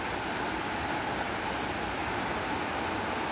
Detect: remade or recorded recorded